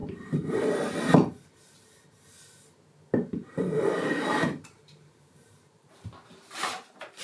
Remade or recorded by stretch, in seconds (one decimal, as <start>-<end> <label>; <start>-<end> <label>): 0.0-3.4 recorded; 3.4-7.2 remade